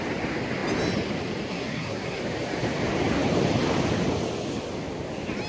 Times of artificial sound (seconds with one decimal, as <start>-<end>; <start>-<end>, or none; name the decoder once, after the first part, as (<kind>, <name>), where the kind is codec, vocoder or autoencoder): 1.5-2.2 (codec, SNAC)